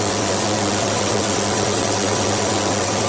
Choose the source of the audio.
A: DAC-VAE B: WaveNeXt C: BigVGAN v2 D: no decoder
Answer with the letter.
B